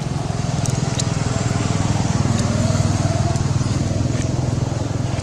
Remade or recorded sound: recorded